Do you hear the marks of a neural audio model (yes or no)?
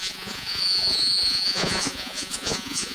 yes